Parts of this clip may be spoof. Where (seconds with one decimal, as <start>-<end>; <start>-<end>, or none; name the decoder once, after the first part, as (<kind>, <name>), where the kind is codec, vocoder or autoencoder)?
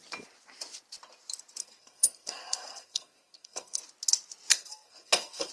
1.6-3.8 (codec, SNAC); 4.5-5.5